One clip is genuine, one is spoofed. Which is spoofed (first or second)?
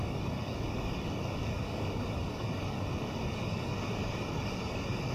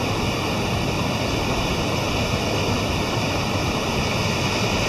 first